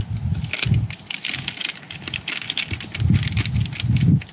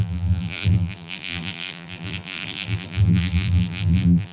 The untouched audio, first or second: first